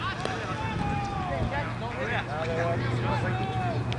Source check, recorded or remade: recorded